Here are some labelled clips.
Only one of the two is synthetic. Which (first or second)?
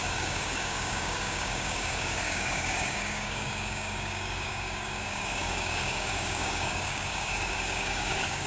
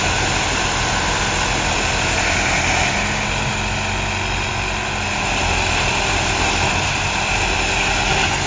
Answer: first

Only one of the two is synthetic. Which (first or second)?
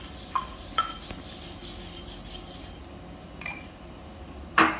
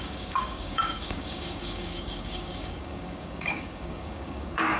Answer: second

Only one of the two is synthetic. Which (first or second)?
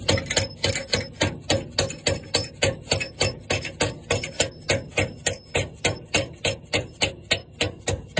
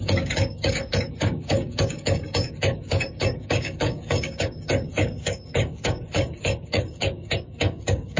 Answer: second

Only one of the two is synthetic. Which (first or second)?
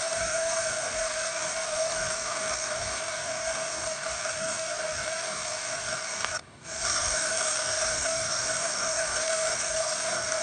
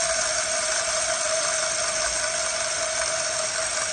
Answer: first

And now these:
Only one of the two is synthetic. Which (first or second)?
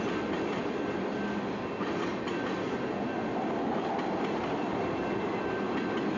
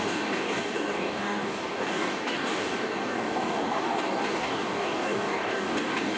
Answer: second